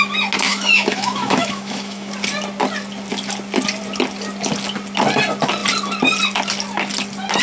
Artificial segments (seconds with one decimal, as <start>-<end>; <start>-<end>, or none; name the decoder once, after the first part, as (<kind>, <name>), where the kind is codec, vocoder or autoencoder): 0.5-2.1 (autoencoder, DAC-VAE)